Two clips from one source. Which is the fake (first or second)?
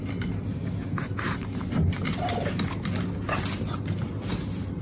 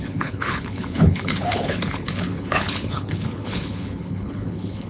second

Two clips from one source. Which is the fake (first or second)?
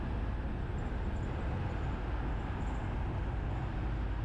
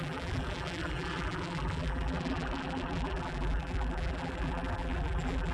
second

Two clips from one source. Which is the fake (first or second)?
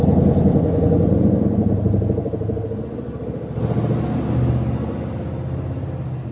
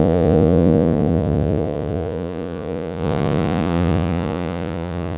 second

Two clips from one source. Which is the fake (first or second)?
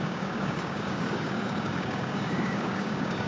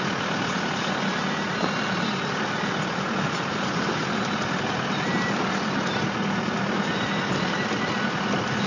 first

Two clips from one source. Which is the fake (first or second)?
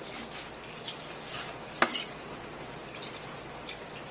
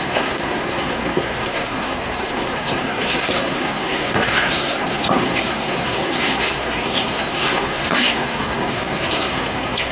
second